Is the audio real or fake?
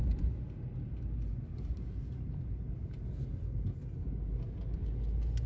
real